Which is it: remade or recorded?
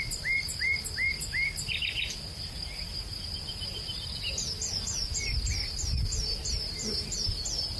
recorded